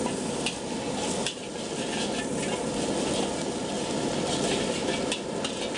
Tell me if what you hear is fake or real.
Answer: real